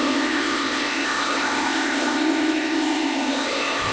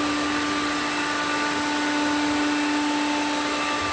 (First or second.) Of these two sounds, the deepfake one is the first